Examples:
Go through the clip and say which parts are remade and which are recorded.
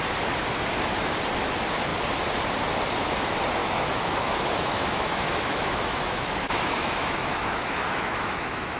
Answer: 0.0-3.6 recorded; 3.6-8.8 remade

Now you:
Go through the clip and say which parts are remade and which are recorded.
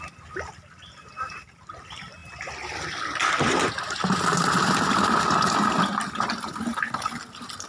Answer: 0.0-2.2 recorded; 2.2-3.0 remade; 3.0-7.7 recorded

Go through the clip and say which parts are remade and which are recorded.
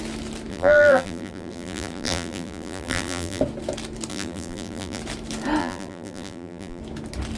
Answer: 0.0-0.5 recorded; 0.5-3.4 remade; 3.4-4.1 recorded; 4.1-5.0 remade; 5.0-5.6 recorded; 5.6-6.8 remade; 6.8-7.4 recorded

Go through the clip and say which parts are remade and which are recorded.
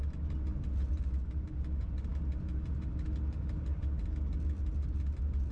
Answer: 0.0-5.5 recorded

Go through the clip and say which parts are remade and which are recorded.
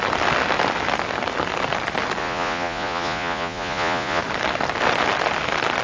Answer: 0.0-2.2 recorded; 2.2-4.2 remade; 4.2-5.8 recorded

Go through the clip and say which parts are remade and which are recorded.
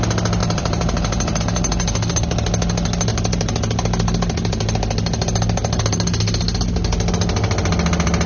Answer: 0.0-0.4 recorded; 0.4-1.4 remade; 1.4-8.3 recorded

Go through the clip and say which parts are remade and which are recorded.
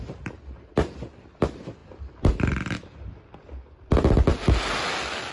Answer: 0.0-5.3 recorded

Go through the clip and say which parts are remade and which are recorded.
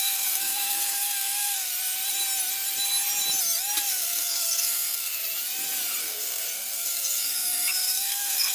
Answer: 0.0-1.7 remade; 1.7-3.9 recorded; 3.9-5.2 remade; 5.2-6.0 recorded; 6.0-8.5 remade